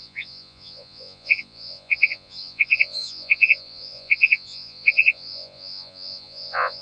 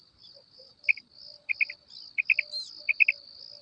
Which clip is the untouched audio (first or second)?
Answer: second